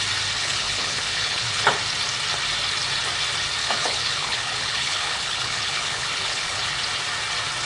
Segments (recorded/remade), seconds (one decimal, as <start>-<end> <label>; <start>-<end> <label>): 0.0-0.4 recorded; 0.4-1.7 remade; 1.7-3.6 recorded; 3.6-6.8 remade; 6.8-7.7 recorded